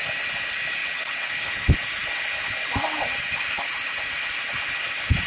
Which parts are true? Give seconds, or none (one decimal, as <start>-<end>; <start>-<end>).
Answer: 0.0-0.8; 1.3-5.3